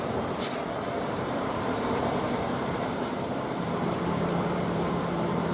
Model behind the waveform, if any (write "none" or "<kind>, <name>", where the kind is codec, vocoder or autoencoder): vocoder, BigVGAN v2